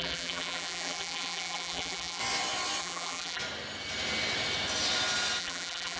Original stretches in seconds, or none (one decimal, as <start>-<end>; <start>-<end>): 2.2-2.8; 3.4-5.4